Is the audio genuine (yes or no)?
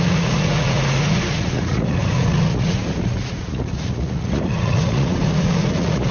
no